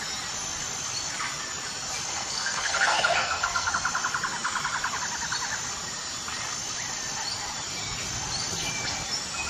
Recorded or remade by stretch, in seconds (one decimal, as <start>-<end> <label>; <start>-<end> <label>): 0.0-2.1 recorded; 2.1-3.7 remade; 3.7-9.5 recorded